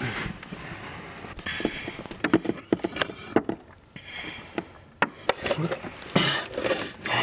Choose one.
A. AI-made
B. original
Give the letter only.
B